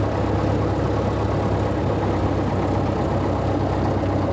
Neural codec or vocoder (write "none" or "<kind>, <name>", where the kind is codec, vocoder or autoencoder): none